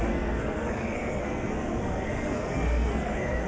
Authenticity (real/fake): fake